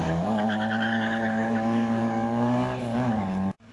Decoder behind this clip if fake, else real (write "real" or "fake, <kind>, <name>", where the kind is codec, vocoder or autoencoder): fake, codec, DAC